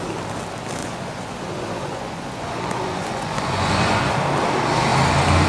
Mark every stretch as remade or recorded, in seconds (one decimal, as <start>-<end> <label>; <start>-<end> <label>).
0.0-0.8 recorded; 0.8-4.1 remade; 4.1-5.5 recorded